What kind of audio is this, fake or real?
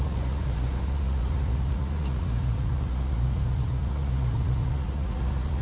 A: fake